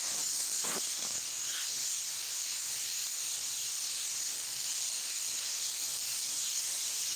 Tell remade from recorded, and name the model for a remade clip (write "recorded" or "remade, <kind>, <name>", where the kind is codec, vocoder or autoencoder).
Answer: remade, codec, DAC